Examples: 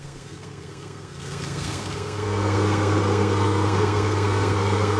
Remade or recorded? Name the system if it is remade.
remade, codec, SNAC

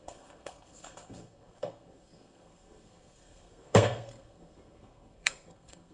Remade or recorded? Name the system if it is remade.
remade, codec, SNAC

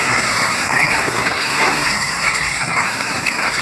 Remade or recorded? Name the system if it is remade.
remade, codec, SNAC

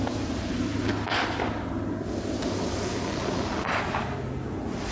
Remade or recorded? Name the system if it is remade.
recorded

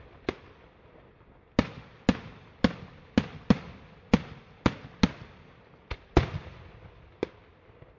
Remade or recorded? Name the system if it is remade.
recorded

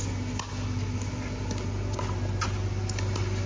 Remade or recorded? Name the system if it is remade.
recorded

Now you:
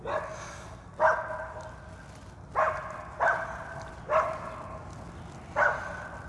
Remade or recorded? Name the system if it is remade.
recorded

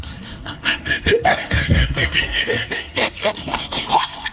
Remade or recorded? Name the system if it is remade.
remade, codec, SNAC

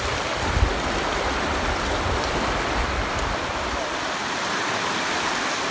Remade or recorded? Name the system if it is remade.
recorded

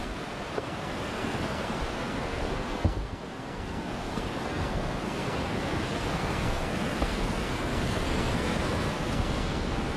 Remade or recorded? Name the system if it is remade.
remade, codec, SNAC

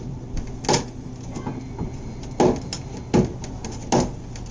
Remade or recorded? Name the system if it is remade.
recorded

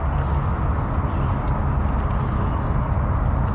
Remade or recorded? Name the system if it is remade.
recorded